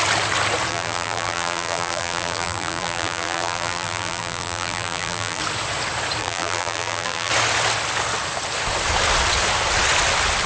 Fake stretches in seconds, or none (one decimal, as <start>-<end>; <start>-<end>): 0.7-5.4; 6.2-7.3